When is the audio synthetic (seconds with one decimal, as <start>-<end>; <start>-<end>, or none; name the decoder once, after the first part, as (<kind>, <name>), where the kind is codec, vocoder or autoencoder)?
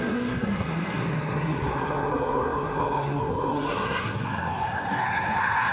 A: 0.0-5.7 (codec, SNAC)